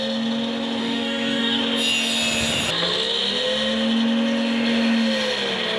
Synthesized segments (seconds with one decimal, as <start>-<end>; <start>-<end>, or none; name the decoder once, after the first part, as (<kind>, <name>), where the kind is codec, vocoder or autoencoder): 0.8-1.6 (codec, DAC)